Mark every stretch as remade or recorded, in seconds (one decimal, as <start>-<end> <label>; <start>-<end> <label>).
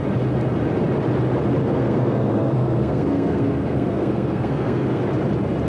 0.0-1.6 recorded; 1.6-5.0 remade; 5.0-5.7 recorded